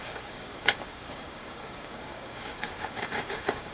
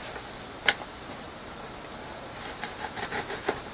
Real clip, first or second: second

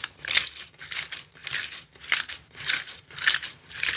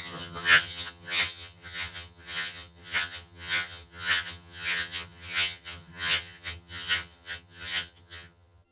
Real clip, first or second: first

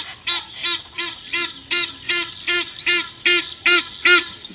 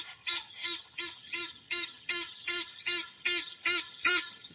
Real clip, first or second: first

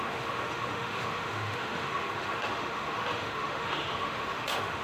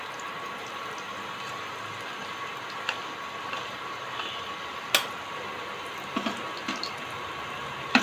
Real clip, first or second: second